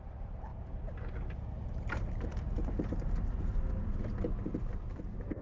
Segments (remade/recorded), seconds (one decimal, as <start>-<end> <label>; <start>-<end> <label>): 0.0-5.4 recorded